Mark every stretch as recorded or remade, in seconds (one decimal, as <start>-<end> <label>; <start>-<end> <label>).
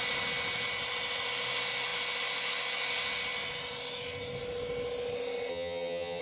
0.0-5.5 recorded; 5.5-6.2 remade